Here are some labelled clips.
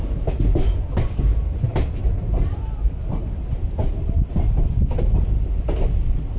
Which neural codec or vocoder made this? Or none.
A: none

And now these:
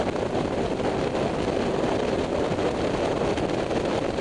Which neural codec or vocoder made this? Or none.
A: none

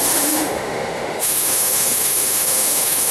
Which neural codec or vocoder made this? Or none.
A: autoencoder, DAC-VAE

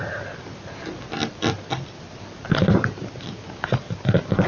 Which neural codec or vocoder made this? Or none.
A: none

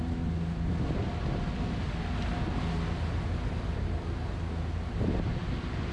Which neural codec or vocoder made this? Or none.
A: none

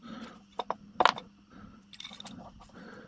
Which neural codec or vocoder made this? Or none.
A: none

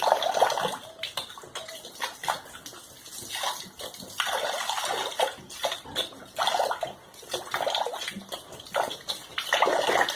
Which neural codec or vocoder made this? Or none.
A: none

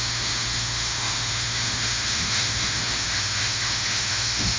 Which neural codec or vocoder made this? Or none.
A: autoencoder, DAC-VAE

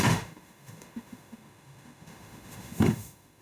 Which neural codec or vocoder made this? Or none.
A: autoencoder, DAC-VAE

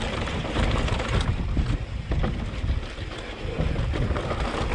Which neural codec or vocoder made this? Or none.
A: none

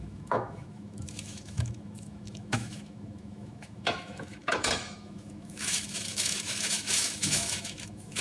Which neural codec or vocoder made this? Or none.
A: autoencoder, DAC-VAE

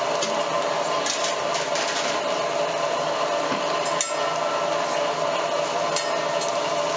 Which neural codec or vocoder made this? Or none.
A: none